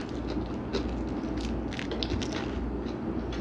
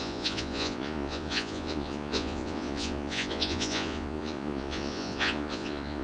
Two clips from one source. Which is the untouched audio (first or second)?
first